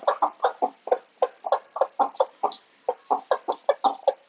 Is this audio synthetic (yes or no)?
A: no